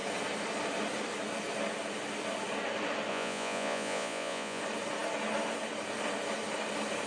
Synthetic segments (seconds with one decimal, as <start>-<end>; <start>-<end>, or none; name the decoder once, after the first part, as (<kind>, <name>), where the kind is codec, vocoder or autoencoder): 3.1-4.6 (vocoder, Vocos)